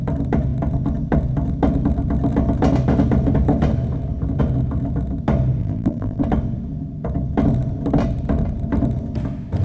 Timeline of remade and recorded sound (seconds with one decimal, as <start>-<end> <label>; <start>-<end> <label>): 0.0-5.6 recorded; 5.6-6.2 remade; 6.2-9.6 recorded